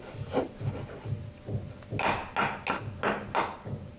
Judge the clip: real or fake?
real